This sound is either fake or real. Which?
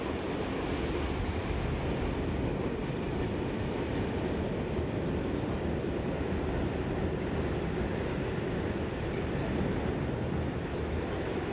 real